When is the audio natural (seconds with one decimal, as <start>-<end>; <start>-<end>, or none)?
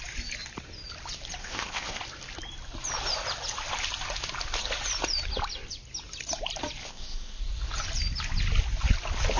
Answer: 0.0-1.4; 2.0-6.8; 7.4-9.4